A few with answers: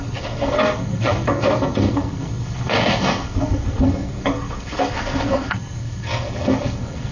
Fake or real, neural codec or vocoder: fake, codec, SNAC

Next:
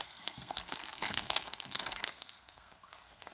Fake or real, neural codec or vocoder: fake, codec, SNAC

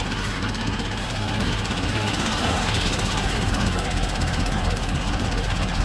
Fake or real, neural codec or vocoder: fake, codec, SNAC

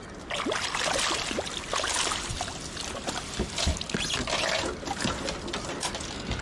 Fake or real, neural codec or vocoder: real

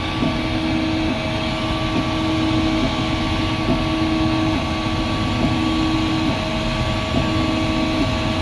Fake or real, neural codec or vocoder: real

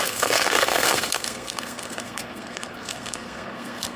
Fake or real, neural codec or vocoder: fake, codec, SNAC